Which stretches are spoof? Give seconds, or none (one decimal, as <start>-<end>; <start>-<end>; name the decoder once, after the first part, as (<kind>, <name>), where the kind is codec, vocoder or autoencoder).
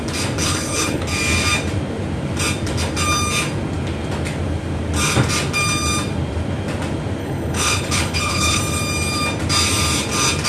0.4-1.0 (codec, HILCodec); 7.2-8.6